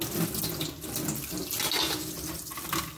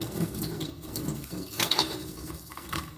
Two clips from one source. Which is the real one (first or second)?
first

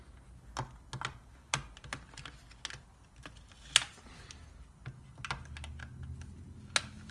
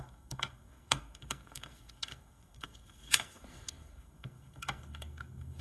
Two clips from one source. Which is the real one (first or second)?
first